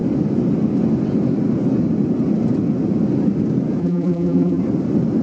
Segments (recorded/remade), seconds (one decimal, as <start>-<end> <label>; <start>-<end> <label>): 0.0-3.8 recorded; 3.8-4.6 remade; 4.6-5.2 recorded